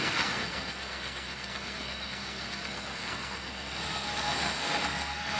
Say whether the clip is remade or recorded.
remade